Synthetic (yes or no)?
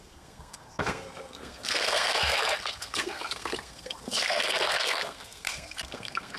yes